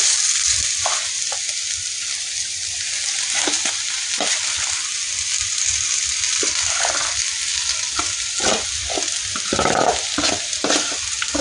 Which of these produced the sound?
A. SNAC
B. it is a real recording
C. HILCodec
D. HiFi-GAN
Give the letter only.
B